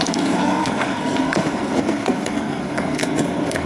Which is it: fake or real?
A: fake